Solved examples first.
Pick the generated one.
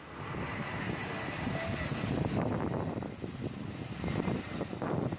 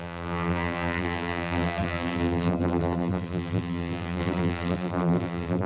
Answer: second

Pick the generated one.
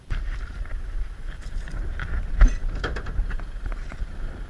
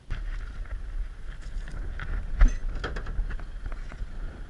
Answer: first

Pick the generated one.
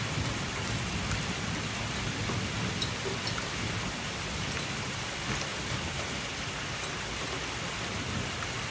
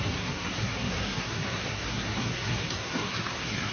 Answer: second